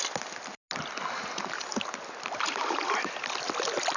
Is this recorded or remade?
recorded